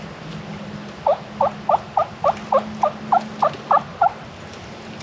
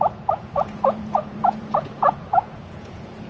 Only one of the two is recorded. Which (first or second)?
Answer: first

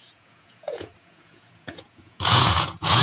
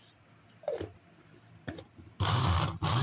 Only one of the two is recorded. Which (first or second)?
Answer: second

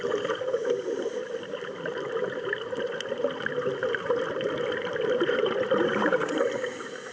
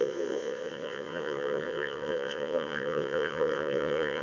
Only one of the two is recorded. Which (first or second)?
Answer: first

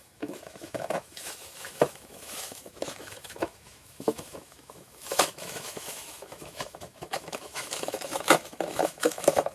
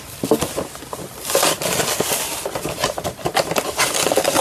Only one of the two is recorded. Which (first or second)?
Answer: second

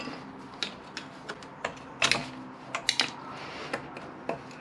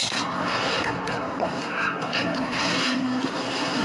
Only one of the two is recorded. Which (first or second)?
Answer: first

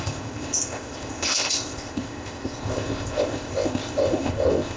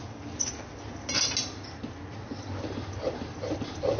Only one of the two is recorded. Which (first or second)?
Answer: second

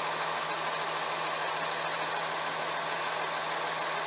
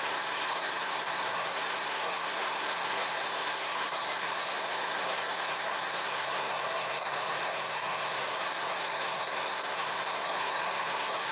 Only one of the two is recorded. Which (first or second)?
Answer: first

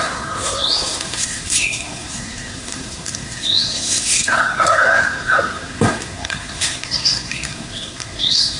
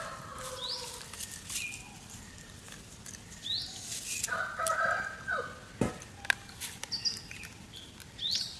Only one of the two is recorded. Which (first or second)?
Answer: second